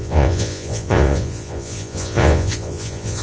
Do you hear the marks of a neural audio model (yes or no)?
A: yes